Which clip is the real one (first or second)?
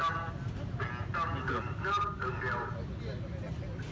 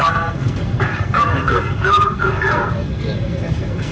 first